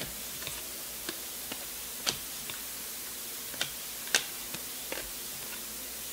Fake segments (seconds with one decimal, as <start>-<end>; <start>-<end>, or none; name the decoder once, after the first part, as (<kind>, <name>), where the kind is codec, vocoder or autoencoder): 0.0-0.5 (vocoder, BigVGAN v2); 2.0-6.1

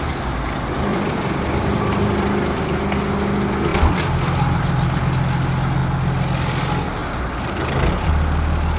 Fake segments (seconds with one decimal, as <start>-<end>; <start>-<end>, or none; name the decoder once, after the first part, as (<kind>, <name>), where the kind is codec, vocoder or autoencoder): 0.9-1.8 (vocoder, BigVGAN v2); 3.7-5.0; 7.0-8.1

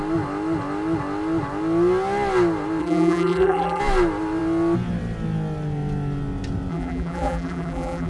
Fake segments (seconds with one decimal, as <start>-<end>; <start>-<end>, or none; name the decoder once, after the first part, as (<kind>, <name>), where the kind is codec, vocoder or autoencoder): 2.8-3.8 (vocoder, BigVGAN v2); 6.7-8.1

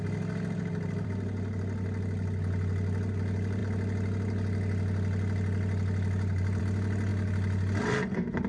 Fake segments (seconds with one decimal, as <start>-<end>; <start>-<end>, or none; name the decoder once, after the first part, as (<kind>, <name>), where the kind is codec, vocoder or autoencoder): none

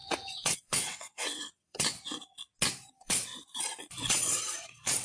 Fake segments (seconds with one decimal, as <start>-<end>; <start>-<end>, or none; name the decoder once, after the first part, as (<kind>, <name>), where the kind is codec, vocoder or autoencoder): 0.0-2.4 (vocoder, WaveNeXt); 2.9-3.3; 3.8-5.0

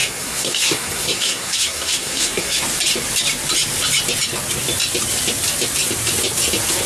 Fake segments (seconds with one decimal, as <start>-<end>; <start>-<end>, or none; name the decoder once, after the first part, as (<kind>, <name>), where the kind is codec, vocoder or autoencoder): 0.0-2.6 (codec, SNAC)

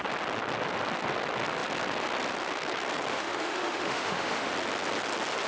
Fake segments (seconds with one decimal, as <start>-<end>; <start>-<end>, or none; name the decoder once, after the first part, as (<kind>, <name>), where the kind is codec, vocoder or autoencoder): 3.1-4.5 (autoencoder, DAC-VAE)